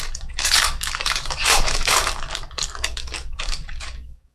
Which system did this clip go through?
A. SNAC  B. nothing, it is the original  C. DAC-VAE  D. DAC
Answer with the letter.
D